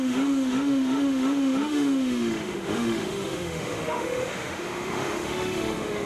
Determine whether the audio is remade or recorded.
remade